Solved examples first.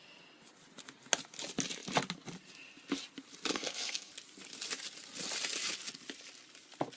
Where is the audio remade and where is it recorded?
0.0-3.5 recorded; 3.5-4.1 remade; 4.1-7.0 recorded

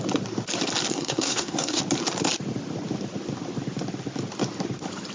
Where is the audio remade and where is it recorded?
0.0-0.9 recorded; 0.9-1.8 remade; 1.8-5.1 recorded

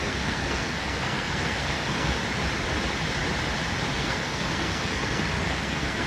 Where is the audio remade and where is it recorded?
0.0-2.2 remade; 2.2-4.0 recorded; 4.0-6.1 remade

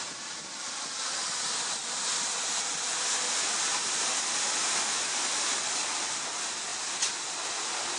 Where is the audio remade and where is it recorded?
0.0-8.0 recorded

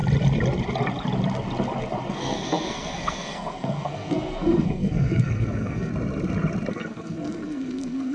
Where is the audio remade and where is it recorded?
0.0-2.1 recorded; 2.1-5.9 remade; 5.9-6.7 recorded; 6.7-8.1 remade